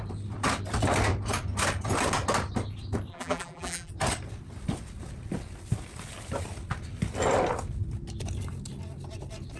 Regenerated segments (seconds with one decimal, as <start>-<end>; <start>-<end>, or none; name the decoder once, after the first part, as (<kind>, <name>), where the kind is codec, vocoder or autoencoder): 3.1-3.9 (vocoder, BigVGAN v2)